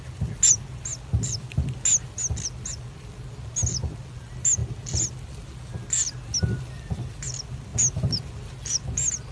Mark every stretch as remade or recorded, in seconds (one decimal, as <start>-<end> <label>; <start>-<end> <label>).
0.0-9.3 recorded